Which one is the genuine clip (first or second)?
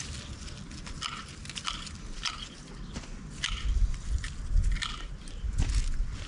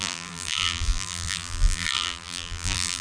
first